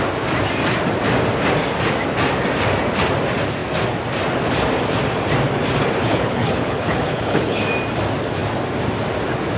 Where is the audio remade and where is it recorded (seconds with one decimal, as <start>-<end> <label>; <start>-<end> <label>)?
0.0-6.0 recorded; 6.0-7.6 remade; 7.6-9.6 recorded